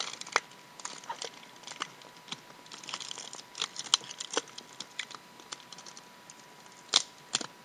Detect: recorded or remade recorded